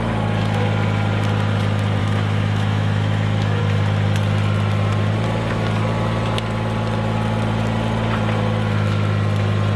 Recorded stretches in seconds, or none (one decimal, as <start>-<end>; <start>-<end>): 0.0-2.0; 3.6-9.8